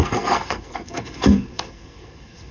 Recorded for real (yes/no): no